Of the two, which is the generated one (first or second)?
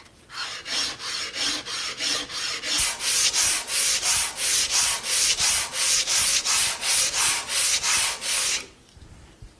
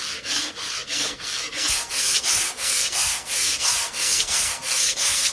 second